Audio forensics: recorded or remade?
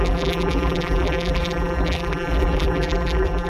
remade